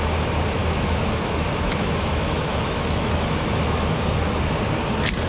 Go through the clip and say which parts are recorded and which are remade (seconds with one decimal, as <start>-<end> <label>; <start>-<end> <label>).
0.0-0.6 recorded; 0.6-3.8 remade; 3.8-5.3 recorded